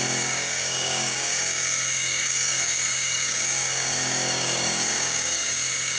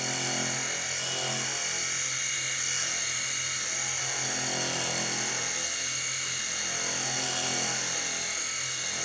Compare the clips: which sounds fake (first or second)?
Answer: first